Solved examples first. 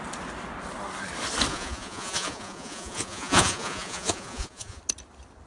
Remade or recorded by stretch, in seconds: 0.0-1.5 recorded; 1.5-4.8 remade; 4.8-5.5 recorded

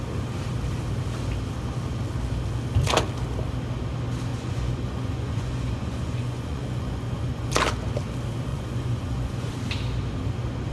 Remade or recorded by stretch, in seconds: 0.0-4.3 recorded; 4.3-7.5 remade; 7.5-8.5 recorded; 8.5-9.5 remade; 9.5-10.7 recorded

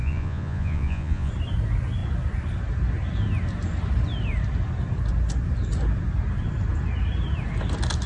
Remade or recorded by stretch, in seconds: 0.0-1.3 remade; 1.3-8.1 recorded

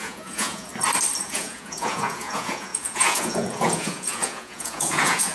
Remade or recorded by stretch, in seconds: 0.0-0.7 remade; 0.7-1.2 recorded; 1.2-5.3 remade

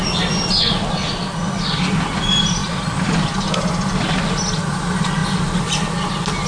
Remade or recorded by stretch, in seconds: 0.0-6.5 recorded

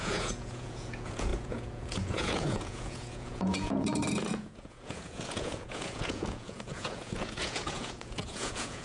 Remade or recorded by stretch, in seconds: 0.0-8.8 remade

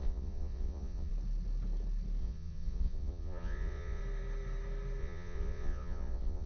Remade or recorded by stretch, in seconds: 0.0-1.1 remade; 1.1-2.2 recorded; 2.2-4.0 remade; 4.0-5.0 recorded; 5.0-6.5 remade